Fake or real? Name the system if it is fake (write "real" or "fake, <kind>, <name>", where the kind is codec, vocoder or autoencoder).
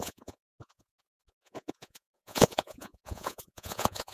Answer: fake, vocoder, Vocos